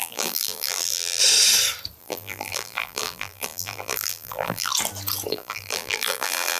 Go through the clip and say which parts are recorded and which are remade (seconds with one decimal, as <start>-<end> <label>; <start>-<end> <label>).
0.0-1.2 remade; 1.2-2.0 recorded; 2.0-4.7 remade; 4.7-5.3 recorded; 5.3-6.6 remade